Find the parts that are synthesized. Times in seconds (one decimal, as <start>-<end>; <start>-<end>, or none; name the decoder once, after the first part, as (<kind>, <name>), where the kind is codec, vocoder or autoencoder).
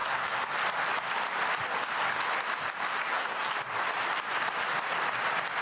0.0-0.5 (codec, SNAC); 3.0-3.5